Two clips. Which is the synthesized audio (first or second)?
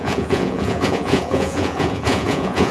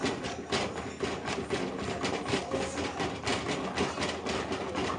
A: first